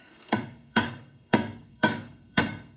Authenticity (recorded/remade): remade